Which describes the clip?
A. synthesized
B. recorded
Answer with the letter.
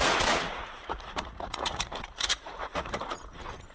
A